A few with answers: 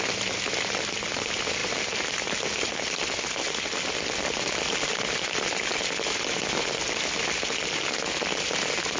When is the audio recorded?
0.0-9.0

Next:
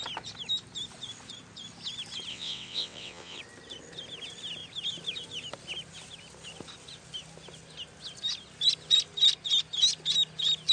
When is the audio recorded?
0.0-2.3; 3.4-10.7

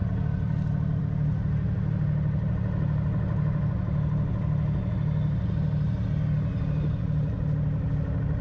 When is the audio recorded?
0.0-8.4

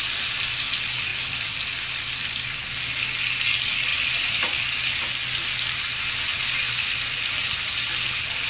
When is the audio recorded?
0.0-1.1; 2.8-3.9; 4.7-6.3

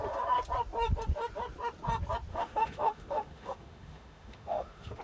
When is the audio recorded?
0.0-2.3

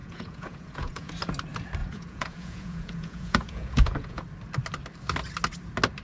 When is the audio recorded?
1.1-1.8; 4.2-6.0